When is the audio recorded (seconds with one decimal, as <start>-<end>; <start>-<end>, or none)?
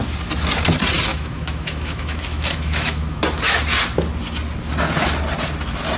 0.0-1.1; 3.2-6.0